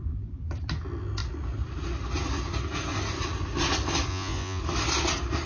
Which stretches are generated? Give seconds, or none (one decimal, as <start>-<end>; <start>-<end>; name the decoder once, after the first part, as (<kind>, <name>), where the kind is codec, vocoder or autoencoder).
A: 4.1-4.6 (vocoder, Vocos)